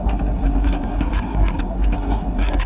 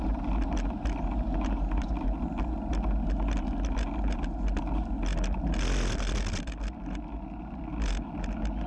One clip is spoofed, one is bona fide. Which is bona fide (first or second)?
second